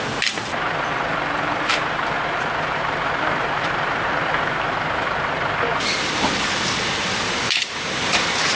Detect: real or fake fake